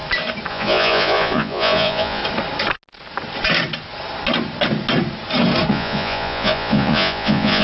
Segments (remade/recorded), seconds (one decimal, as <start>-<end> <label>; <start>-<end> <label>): 0.0-0.5 recorded; 0.5-2.2 remade; 2.2-5.7 recorded; 5.7-7.6 remade